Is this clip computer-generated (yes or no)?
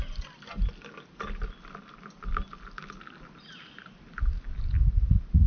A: no